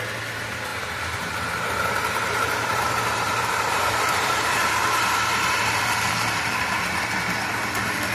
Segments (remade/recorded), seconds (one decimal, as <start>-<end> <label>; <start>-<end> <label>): 0.0-0.7 recorded; 0.7-5.6 remade; 5.6-8.1 recorded

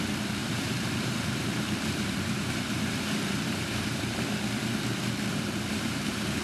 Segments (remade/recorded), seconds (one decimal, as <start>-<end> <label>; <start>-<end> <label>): 0.0-0.4 recorded; 0.4-4.2 remade; 4.2-5.3 recorded; 5.3-6.4 remade